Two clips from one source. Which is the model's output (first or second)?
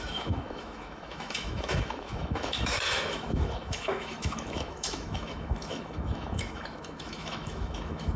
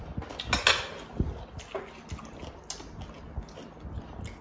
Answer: first